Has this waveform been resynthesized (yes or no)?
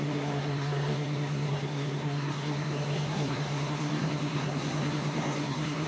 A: yes